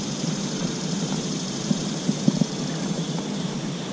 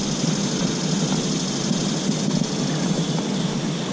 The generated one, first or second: first